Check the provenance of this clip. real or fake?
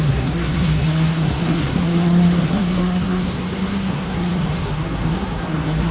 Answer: fake